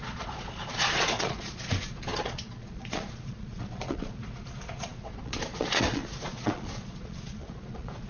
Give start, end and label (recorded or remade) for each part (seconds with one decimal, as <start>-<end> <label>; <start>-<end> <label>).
0.0-8.1 remade